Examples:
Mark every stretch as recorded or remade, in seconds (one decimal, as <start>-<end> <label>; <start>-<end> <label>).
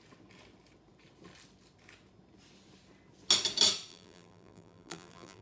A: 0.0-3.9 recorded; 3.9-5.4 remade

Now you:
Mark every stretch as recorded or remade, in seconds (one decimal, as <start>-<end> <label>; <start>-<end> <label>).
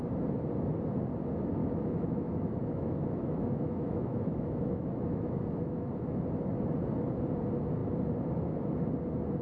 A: 0.0-1.6 recorded; 1.6-6.2 remade; 6.2-9.4 recorded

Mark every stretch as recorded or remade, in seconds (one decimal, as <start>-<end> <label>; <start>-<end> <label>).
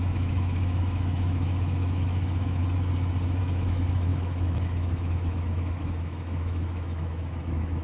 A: 0.0-2.6 remade; 2.6-3.4 recorded; 3.4-7.8 remade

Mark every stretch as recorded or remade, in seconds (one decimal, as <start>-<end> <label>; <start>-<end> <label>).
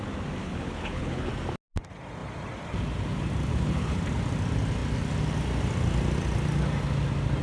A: 0.0-0.4 recorded; 0.4-1.3 remade; 1.3-3.5 recorded; 3.5-4.0 remade; 4.0-7.4 recorded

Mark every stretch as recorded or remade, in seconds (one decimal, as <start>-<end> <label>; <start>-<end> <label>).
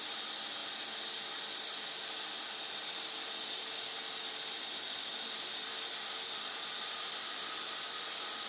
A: 0.0-0.6 remade; 0.6-1.6 recorded; 1.6-8.5 remade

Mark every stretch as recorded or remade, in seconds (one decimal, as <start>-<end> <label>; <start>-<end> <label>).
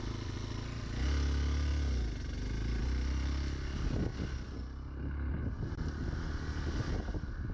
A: 0.0-7.5 recorded